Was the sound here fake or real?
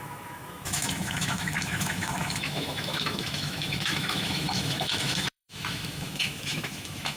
fake